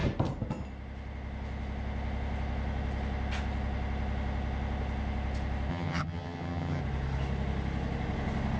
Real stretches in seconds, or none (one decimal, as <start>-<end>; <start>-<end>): 0.0-5.7; 6.8-8.6

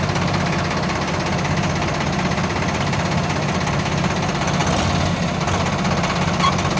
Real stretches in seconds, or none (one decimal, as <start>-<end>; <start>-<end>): 0.0-6.8

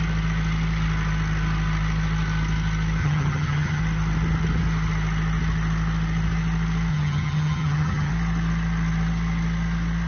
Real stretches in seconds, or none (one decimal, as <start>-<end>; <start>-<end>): 0.0-3.0; 3.8-6.9; 8.1-10.1

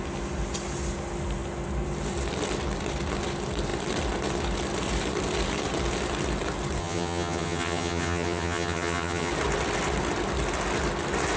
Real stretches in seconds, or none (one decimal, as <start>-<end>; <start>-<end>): 0.0-6.8; 9.3-11.4